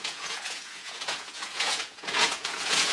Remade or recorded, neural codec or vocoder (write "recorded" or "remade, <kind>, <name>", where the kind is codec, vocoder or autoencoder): remade, vocoder, Vocos